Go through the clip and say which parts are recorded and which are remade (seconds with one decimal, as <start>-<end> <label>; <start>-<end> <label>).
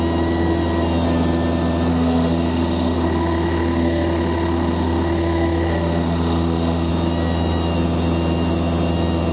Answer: 0.0-1.9 recorded; 1.9-6.9 remade; 6.9-9.3 recorded